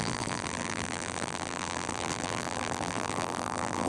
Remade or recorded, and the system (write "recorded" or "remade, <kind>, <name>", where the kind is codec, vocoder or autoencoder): remade, vocoder, BigVGAN v2